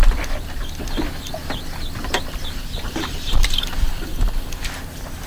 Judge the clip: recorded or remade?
remade